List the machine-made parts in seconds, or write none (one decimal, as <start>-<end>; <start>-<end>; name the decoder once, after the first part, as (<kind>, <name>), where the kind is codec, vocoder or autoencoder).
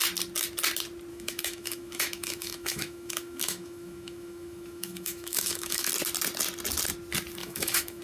1.1-5.9 (autoencoder, DAC-VAE); 7.4-8.0